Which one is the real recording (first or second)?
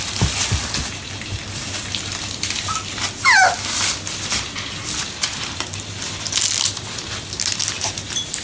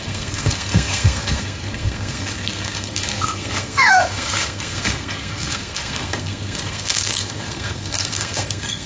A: first